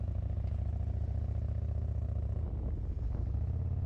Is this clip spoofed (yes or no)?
no